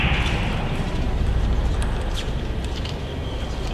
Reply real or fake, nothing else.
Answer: fake